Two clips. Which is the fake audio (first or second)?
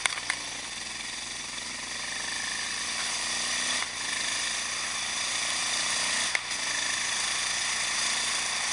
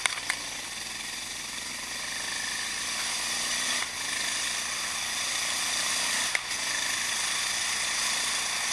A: second